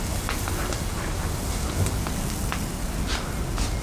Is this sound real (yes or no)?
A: yes